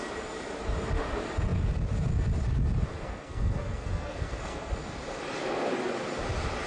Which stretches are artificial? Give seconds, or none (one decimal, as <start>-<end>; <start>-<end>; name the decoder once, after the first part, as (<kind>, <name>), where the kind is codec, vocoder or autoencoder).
2.9-4.7 (codec, SNAC)